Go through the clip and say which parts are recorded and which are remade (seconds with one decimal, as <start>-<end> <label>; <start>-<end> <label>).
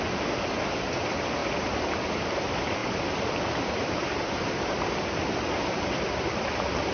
0.0-6.9 recorded